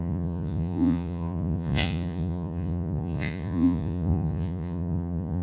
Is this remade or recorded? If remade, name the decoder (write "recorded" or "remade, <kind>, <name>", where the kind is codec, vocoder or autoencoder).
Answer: remade, vocoder, Vocos